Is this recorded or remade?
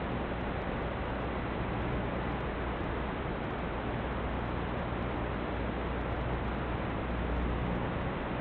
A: recorded